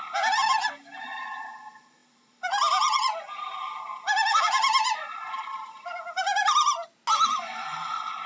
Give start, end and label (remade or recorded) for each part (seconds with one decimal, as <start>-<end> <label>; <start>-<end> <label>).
0.0-8.3 recorded